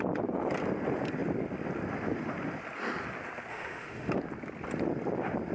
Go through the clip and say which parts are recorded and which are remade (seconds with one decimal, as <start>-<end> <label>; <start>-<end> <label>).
0.0-3.5 recorded; 3.5-4.1 remade; 4.1-5.5 recorded